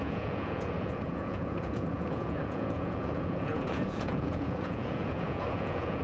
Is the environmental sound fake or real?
fake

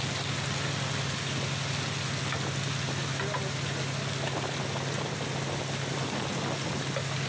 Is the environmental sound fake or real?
real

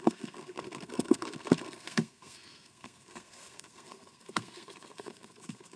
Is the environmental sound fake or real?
fake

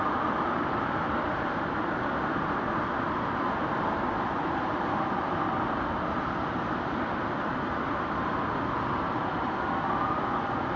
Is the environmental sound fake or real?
fake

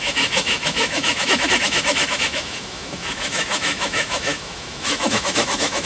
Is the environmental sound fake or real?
fake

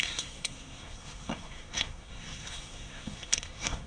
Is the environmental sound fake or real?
fake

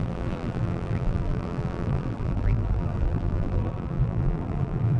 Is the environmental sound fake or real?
fake